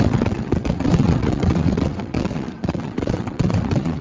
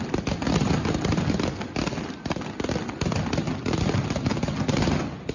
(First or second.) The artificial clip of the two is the first